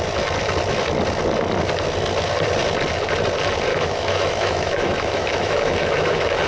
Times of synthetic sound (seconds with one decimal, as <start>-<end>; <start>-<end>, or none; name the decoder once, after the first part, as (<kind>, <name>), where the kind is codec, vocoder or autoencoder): 3.7-6.5 (autoencoder, DAC-VAE)